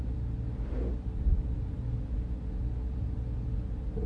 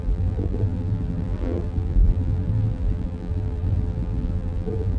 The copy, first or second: second